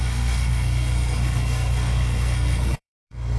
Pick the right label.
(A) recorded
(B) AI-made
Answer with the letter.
B